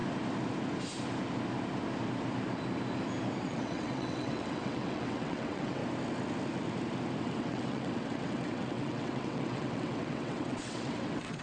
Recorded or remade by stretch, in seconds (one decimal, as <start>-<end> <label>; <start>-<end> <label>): 0.0-3.4 recorded; 3.4-5.8 remade; 5.8-7.2 recorded; 7.2-11.4 remade